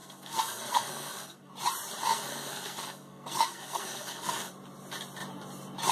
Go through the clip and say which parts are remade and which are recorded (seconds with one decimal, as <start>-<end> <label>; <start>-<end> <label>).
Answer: 0.0-1.5 remade; 1.5-2.1 recorded; 2.1-4.5 remade; 4.5-5.9 recorded